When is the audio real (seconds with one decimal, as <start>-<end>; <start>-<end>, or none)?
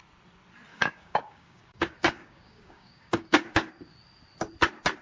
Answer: 0.0-0.7; 3.7-5.0